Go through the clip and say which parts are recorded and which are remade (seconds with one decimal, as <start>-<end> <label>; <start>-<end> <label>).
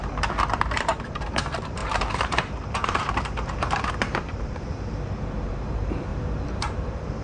0.0-0.5 recorded; 0.5-7.2 remade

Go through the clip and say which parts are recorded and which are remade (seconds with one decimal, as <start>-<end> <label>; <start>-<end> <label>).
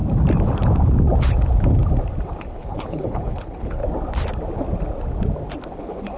0.0-2.4 recorded; 2.4-3.8 remade; 3.8-5.8 recorded; 5.8-6.2 remade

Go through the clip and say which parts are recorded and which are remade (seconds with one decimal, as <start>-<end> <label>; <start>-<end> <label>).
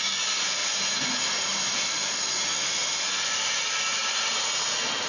0.0-5.1 recorded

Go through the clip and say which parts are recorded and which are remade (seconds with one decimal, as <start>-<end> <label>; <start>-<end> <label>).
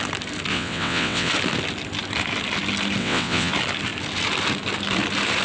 0.0-0.5 recorded; 0.5-1.3 remade; 1.3-3.0 recorded; 3.0-3.5 remade; 3.5-5.4 recorded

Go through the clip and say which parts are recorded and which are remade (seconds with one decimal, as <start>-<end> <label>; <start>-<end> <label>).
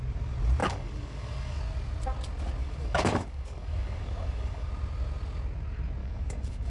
0.0-0.6 recorded; 0.6-1.6 remade; 1.6-2.6 recorded; 2.6-4.7 remade; 4.7-6.0 recorded; 6.0-6.7 remade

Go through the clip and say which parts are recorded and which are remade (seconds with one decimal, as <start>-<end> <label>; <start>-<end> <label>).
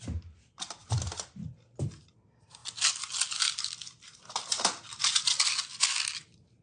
0.0-6.6 recorded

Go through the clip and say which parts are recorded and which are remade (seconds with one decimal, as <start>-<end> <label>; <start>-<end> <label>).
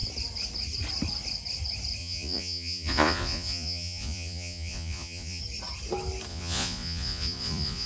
0.0-2.0 recorded; 2.0-5.4 remade; 5.4-6.3 recorded; 6.3-7.9 remade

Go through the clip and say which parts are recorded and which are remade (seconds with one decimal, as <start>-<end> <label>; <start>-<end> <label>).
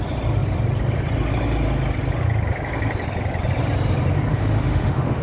0.0-4.3 recorded; 4.3-5.2 remade